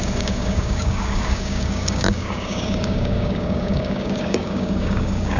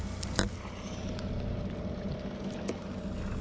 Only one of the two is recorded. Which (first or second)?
second